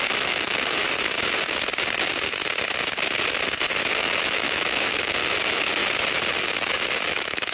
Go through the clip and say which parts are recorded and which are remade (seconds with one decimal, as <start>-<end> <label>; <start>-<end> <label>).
0.0-0.8 remade; 0.8-3.9 recorded; 3.9-5.8 remade; 5.8-7.1 recorded; 7.1-7.5 remade